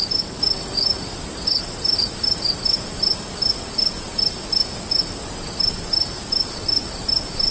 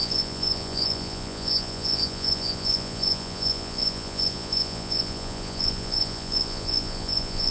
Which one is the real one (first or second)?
first